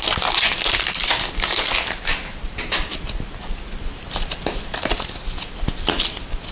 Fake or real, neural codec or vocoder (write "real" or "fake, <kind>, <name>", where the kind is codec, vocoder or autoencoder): real